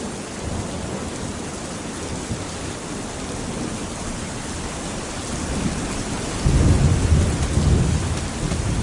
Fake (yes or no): no